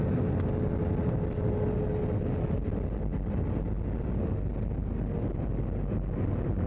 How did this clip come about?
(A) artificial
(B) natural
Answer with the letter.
B